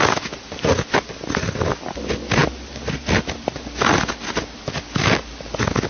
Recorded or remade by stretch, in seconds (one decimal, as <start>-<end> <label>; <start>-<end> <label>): 0.0-5.9 recorded